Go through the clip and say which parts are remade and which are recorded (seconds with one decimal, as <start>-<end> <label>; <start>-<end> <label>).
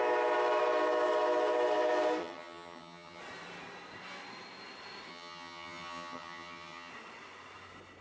0.0-2.2 recorded; 2.2-3.2 remade; 3.2-5.1 recorded; 5.1-6.9 remade; 6.9-8.0 recorded